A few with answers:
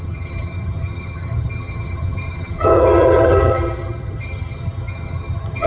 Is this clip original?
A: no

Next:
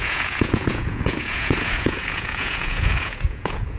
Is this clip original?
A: no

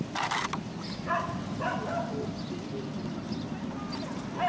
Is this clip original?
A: yes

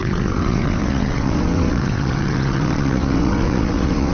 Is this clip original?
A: no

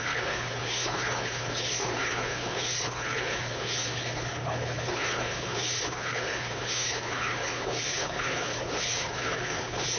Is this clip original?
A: no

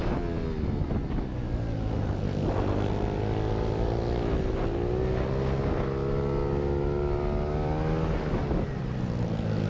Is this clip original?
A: yes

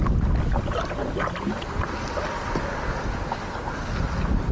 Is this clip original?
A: yes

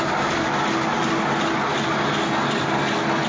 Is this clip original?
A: yes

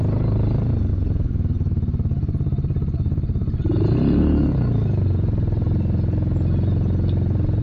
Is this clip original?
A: yes